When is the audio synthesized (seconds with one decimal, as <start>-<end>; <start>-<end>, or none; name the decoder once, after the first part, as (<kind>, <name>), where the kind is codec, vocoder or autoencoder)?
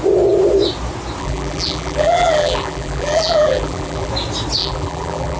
1.2-4.1 (vocoder, BigVGAN v2); 4.6-5.4